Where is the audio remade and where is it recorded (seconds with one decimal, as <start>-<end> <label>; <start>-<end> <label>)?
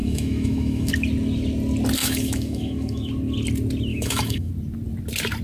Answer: 0.0-0.9 remade; 0.9-2.0 recorded; 2.0-3.1 remade; 3.1-3.9 recorded; 3.9-4.5 remade; 4.5-5.4 recorded